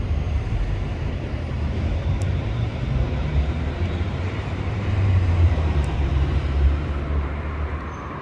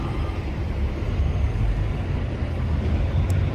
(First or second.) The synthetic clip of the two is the first